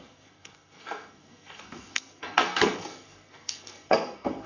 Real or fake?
fake